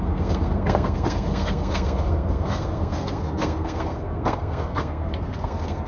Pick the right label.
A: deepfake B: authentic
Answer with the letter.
A